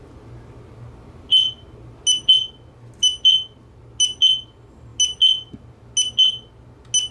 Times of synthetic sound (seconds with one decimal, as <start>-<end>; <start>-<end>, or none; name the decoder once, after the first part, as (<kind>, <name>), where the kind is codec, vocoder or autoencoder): none